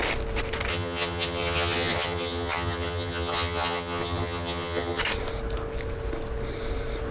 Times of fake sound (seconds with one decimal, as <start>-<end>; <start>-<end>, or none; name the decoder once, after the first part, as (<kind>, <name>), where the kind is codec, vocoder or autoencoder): 0.7-5.0 (vocoder, HiFi-GAN)

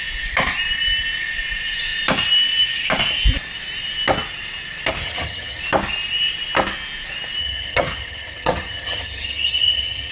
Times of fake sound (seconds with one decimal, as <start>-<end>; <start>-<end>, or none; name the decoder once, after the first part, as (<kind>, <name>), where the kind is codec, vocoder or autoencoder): 5.0-5.6 (vocoder, HiFi-GAN); 7.4-10.1